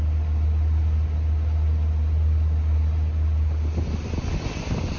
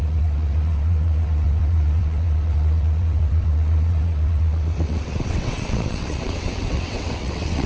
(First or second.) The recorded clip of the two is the first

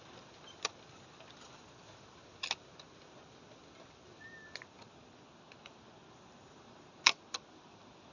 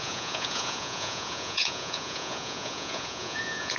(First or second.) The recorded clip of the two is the first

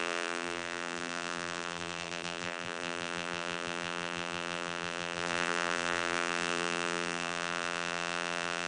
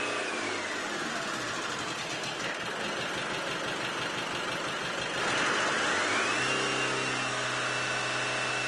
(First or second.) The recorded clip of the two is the second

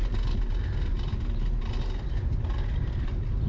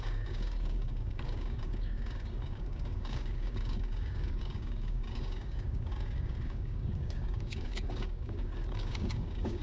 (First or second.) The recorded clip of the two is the first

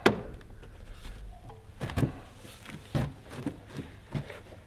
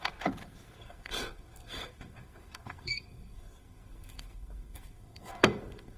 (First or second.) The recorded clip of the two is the first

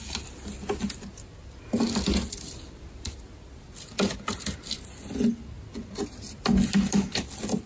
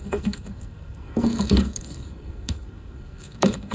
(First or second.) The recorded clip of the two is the first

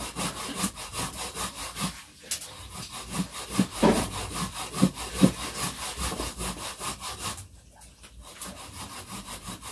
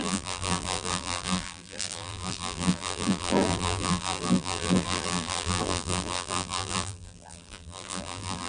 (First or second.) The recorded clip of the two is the first